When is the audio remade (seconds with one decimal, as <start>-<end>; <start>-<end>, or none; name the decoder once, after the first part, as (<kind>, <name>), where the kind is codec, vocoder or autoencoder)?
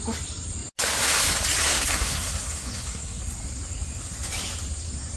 1.6-3.2 (codec, SNAC)